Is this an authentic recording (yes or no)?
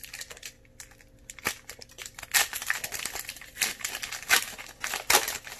yes